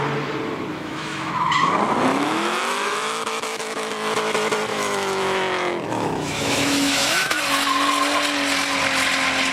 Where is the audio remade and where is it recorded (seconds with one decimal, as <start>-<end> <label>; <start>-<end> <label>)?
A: 0.0-0.7 recorded; 0.7-1.7 remade; 1.7-2.1 recorded; 2.1-3.9 remade; 3.9-4.7 recorded; 4.7-7.4 remade; 7.4-9.5 recorded